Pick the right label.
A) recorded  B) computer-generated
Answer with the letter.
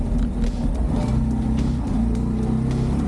A